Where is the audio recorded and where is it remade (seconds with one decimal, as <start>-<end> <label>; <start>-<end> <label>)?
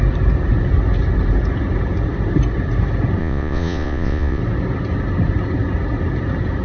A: 0.0-3.2 recorded; 3.2-4.4 remade; 4.4-6.6 recorded